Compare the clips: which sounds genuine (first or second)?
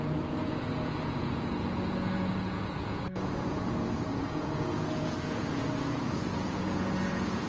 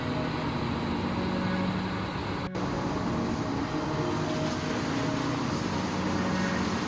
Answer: second